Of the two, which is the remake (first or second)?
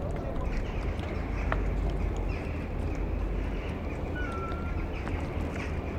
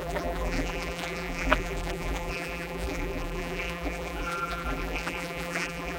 second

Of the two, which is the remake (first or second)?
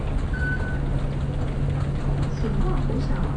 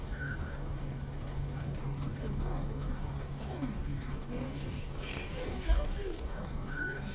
second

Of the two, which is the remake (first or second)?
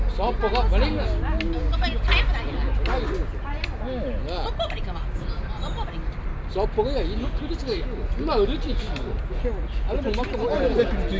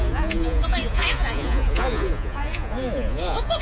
second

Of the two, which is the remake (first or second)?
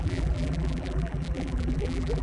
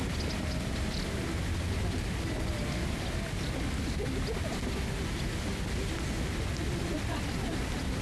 first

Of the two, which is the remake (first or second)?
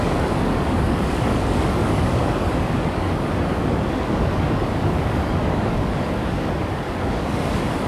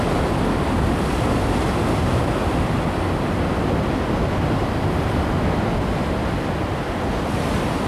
first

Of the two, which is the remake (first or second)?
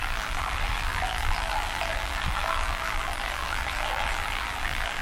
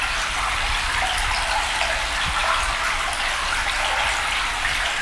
first